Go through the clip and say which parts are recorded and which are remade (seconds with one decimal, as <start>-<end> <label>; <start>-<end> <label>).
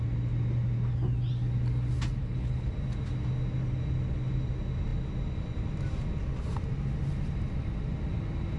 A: 0.0-2.2 recorded; 2.2-2.7 remade; 2.7-8.6 recorded